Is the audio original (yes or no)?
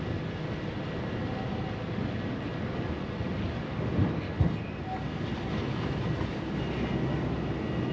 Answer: yes